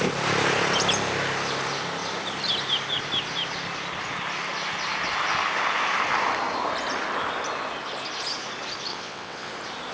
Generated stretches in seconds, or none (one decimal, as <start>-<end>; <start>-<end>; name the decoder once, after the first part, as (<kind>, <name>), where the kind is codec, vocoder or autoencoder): 8.9-9.5 (vocoder, WaveNeXt)